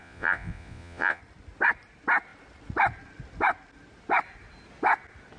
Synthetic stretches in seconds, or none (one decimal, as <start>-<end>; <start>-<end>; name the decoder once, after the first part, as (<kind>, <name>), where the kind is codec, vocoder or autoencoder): 0.0-1.2 (vocoder, Vocos)